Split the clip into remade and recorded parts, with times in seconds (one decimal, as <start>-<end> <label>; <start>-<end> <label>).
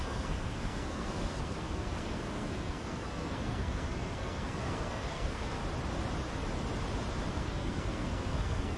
0.0-5.6 remade; 5.6-7.3 recorded; 7.3-8.8 remade